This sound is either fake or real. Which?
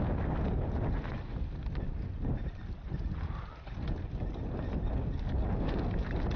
real